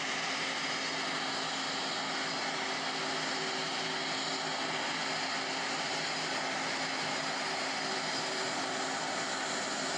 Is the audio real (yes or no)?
yes